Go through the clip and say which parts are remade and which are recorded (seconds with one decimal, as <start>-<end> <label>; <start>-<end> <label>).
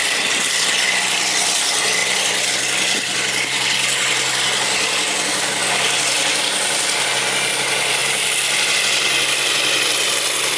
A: 0.0-0.6 remade; 0.6-5.6 recorded; 5.6-7.1 remade; 7.1-8.0 recorded; 8.0-8.7 remade; 8.7-10.6 recorded